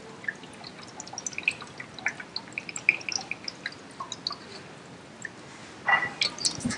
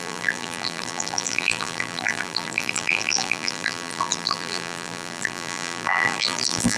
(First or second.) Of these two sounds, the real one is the first